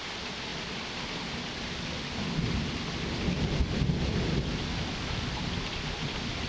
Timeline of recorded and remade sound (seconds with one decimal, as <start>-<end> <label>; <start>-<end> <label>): 0.0-6.5 recorded